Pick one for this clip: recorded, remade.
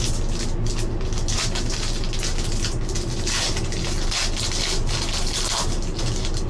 recorded